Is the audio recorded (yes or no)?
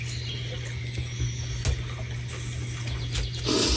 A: yes